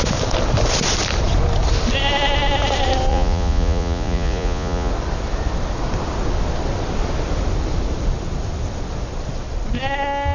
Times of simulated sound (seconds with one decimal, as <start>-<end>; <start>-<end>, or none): 3.1-4.9